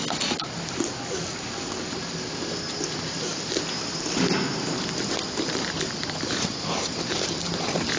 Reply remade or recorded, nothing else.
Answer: recorded